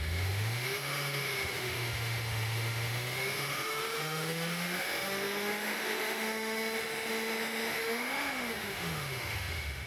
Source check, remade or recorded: remade